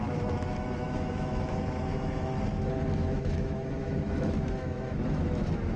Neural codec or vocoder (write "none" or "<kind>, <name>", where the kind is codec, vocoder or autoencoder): autoencoder, DAC-VAE